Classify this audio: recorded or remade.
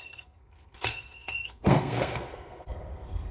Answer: remade